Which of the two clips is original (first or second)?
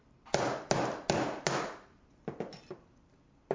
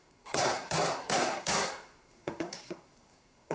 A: first